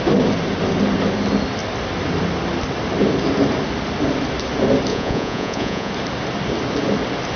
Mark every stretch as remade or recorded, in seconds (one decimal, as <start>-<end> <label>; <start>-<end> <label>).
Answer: 0.0-4.9 recorded; 4.9-5.9 remade; 5.9-7.4 recorded